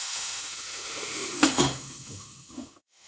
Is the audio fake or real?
fake